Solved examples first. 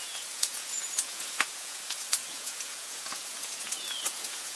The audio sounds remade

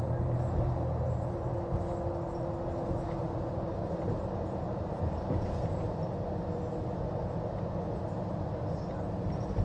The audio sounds recorded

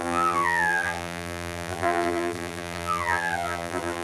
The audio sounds remade